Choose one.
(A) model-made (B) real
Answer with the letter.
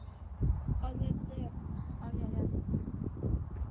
B